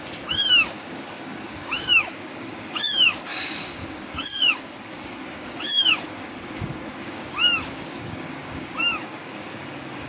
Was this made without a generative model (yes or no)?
no